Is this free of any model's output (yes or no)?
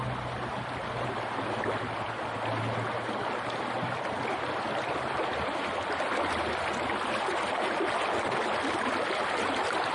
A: yes